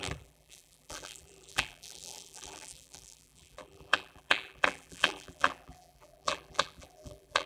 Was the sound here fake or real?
fake